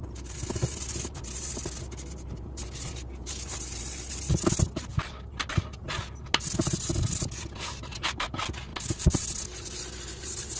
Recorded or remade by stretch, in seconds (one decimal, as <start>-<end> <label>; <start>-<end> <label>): 0.0-10.6 recorded